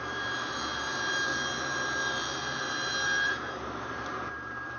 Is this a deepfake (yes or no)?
yes